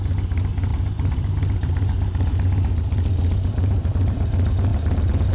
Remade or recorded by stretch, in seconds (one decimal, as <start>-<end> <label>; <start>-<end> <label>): 0.0-0.7 recorded; 0.7-3.9 remade; 3.9-4.7 recorded; 4.7-5.3 remade